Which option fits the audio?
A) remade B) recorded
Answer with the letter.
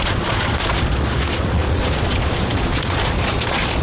A